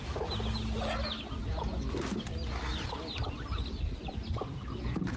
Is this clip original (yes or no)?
yes